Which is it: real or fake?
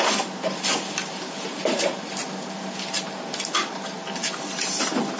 real